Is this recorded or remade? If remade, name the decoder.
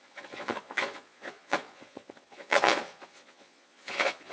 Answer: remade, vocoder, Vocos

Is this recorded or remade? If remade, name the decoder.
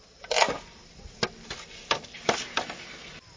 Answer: recorded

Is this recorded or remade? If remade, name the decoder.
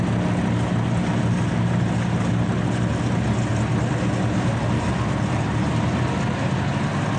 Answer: recorded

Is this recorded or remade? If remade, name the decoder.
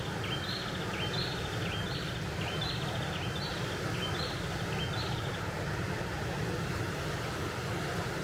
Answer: recorded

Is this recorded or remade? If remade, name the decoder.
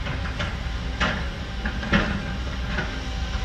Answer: recorded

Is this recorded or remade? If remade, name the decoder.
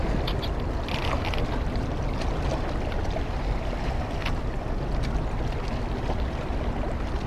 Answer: recorded